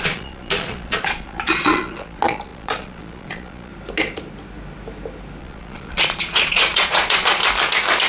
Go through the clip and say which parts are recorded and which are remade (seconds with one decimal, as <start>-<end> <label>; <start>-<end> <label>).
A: 0.0-3.7 remade; 3.7-5.4 recorded; 5.4-7.4 remade; 7.4-8.1 recorded

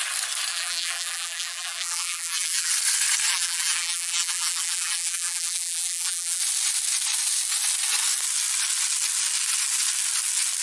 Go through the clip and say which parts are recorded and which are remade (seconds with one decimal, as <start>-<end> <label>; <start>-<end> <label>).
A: 0.0-0.5 recorded; 0.5-2.7 remade; 2.7-3.3 recorded; 3.3-6.4 remade; 6.4-10.6 recorded

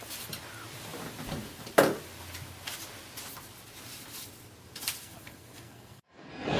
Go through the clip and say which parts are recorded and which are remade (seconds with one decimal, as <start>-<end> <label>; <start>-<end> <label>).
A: 0.0-5.0 recorded; 5.0-6.6 remade

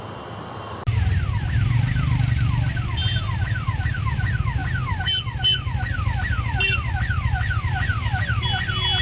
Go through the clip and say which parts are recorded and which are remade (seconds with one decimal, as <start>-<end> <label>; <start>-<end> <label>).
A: 0.0-9.0 recorded

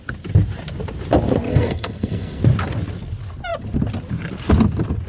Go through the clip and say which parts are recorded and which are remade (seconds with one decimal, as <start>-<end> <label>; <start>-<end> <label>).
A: 0.0-1.5 recorded; 1.5-2.4 remade; 2.4-5.1 recorded

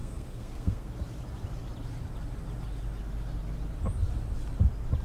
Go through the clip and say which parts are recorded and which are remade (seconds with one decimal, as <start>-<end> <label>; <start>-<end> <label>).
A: 0.0-0.9 remade; 0.9-5.0 recorded

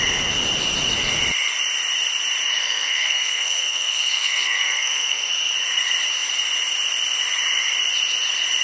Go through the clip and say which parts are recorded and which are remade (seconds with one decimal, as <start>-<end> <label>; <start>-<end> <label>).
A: 0.0-2.6 recorded; 2.6-5.3 remade; 5.3-8.6 recorded